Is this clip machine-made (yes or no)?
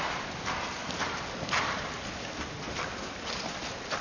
no